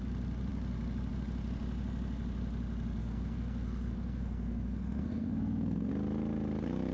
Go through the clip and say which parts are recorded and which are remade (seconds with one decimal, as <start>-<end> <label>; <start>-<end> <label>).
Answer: 0.0-3.0 recorded; 3.0-5.9 remade; 5.9-6.9 recorded